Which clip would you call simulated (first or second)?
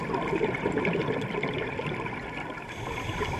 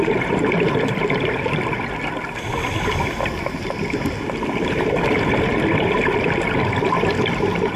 first